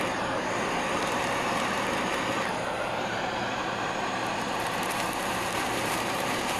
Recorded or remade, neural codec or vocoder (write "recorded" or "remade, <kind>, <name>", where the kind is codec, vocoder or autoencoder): remade, vocoder, BigVGAN v2